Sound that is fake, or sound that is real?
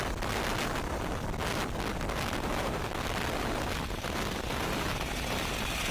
real